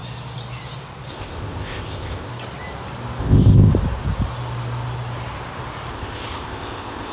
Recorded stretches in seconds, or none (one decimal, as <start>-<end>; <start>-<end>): 0.0-1.1; 2.3-3.2; 3.7-5.9